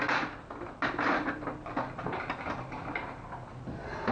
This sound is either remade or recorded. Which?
recorded